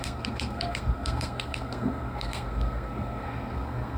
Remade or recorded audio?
remade